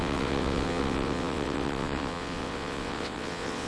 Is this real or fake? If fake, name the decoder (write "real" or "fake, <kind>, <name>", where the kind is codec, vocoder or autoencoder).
fake, vocoder, WaveNeXt